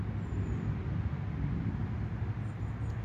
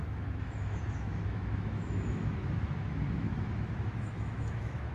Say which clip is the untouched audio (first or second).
first